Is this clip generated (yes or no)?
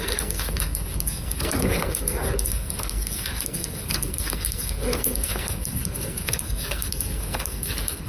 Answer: yes